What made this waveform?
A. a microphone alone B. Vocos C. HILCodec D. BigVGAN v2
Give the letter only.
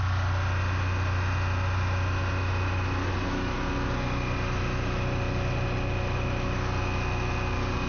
A